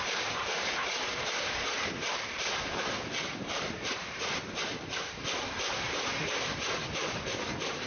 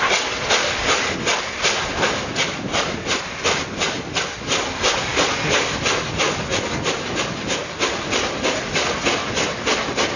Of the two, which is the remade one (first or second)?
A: first